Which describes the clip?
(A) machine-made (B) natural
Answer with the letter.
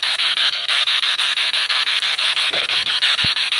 A